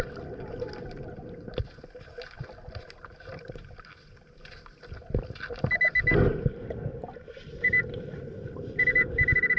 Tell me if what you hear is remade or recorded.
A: recorded